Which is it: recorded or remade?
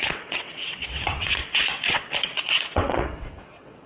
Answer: remade